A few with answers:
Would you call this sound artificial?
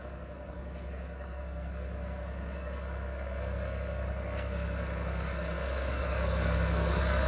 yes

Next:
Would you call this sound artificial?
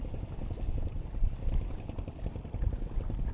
no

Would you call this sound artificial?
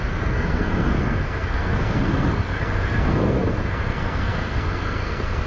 yes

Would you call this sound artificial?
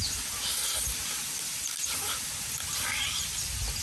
no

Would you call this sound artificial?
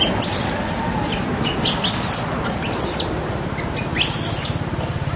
no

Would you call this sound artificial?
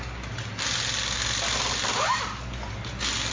no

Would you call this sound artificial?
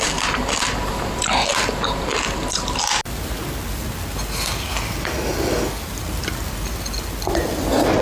no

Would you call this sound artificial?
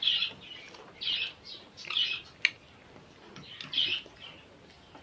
no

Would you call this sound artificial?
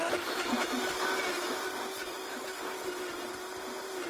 no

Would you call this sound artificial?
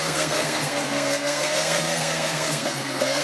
yes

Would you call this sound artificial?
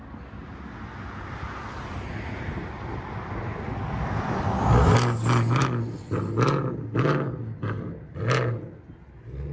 no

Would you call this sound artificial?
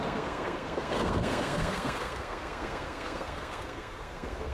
yes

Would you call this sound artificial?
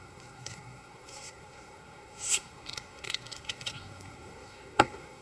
yes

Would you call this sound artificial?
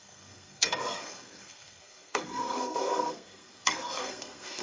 yes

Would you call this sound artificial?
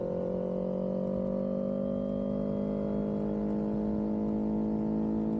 no